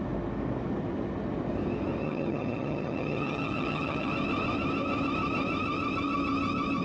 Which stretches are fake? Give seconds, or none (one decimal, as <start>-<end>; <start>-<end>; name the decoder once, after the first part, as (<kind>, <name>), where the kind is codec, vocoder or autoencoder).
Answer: 2.0-4.1 (vocoder, HiFi-GAN)